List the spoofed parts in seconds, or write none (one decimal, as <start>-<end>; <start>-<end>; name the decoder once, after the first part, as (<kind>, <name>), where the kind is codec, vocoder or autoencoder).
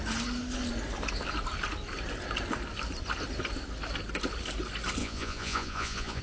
5.0-6.2 (vocoder, Vocos)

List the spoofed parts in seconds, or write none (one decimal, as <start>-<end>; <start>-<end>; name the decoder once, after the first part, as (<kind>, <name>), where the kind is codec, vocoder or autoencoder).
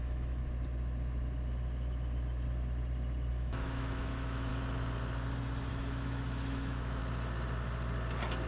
0.0-0.4 (autoencoder, DAC-VAE); 3.3-4.5; 5.7-7.0